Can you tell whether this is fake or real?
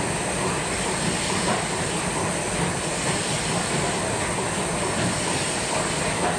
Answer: real